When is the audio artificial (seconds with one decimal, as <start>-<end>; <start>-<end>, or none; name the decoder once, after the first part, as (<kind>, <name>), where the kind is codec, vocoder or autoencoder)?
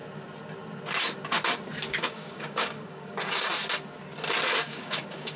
1.9-3.5 (codec, DAC); 4.7-5.4